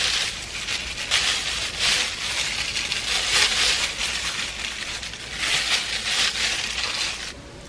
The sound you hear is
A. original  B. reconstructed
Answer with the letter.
A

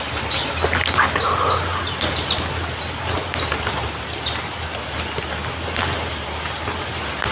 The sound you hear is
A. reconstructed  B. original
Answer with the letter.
B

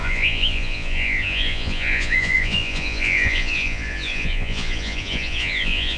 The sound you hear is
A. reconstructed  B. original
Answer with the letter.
A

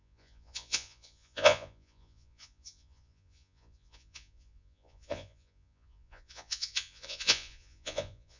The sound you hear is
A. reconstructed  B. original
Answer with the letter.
A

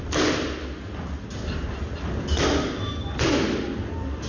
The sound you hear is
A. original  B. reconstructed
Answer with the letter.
A